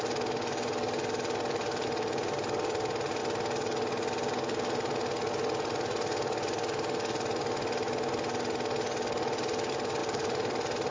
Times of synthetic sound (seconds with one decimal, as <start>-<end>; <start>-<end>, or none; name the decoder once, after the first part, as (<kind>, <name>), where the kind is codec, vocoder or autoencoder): 10.0-10.9 (vocoder, BigVGAN v2)